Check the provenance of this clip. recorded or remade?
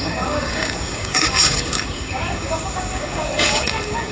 remade